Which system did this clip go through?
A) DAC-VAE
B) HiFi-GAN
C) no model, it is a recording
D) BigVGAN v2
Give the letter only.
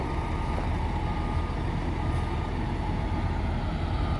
C